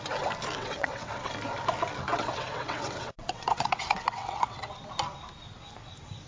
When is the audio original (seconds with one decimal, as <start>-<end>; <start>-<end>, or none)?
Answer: 0.0-0.6; 1.3-2.1; 4.7-6.3